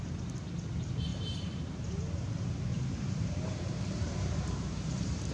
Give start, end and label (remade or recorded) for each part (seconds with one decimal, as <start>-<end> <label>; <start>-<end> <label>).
0.0-1.1 recorded; 1.1-2.3 remade; 2.3-2.7 recorded; 2.7-5.3 remade